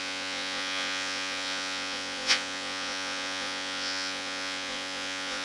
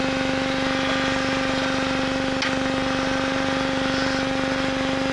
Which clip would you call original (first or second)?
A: second